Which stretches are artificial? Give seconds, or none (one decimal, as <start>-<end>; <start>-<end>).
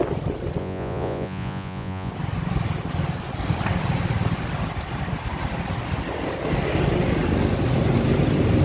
0.6-2.1